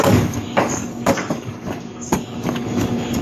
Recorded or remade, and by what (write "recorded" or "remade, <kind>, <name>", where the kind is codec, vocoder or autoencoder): remade, codec, DAC